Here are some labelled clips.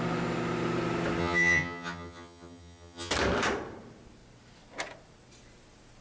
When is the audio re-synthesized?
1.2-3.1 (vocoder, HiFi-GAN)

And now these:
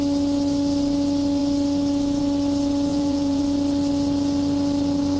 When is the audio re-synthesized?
2.9-3.4 (vocoder, Vocos)

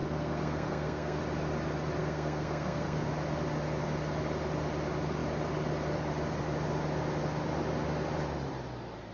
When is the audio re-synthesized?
0.0-1.2 (codec, SNAC); 2.0-3.1

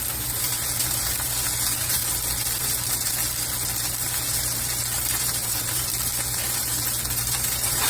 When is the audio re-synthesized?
0.0-2.0 (vocoder, BigVGAN v2); 2.6-3.2; 4.0-5.9; 6.5-7.9

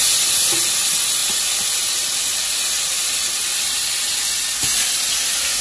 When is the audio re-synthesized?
none

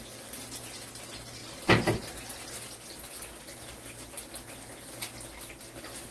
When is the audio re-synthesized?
none

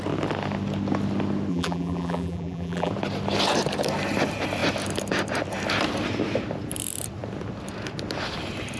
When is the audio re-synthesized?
1.5-2.9 (vocoder, BigVGAN v2)

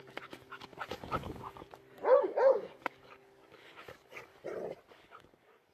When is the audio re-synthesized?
0.0-1.7 (codec, DAC); 2.2-4.3; 4.9-5.7